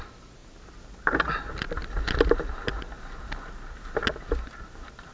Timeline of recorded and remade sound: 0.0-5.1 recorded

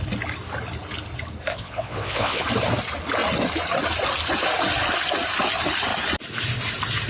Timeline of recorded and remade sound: 0.0-1.5 recorded; 1.5-2.4 remade; 2.4-7.1 recorded

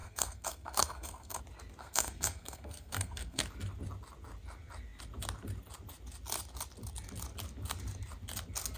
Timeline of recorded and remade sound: 0.0-1.4 remade; 1.4-1.8 recorded; 1.8-3.4 remade; 3.4-8.8 recorded